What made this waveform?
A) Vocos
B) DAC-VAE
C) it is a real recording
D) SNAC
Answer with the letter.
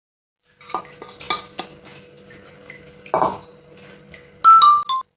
C